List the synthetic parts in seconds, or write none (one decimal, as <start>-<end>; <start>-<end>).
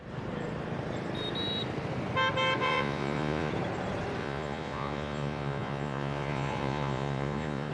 2.6-3.5; 4.2-7.7